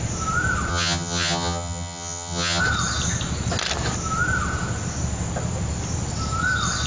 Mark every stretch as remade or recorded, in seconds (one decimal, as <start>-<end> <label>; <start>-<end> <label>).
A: 0.0-0.7 recorded; 0.7-2.6 remade; 2.6-6.9 recorded